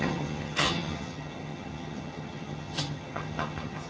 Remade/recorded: remade